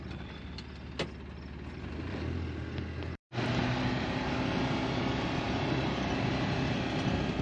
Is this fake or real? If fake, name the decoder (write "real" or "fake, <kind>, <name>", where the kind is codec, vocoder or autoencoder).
real